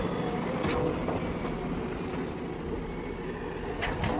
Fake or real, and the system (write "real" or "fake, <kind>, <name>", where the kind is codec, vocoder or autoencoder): real